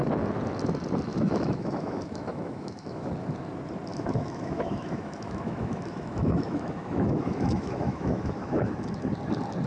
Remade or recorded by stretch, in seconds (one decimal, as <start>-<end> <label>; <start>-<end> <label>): 0.0-1.1 recorded; 1.1-3.1 remade; 3.1-3.9 recorded; 3.9-8.7 remade; 8.7-9.7 recorded